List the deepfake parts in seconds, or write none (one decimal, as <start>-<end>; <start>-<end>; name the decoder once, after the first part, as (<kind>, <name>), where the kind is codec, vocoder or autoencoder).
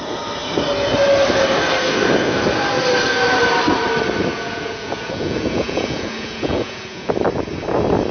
4.3-7.1 (vocoder, Vocos)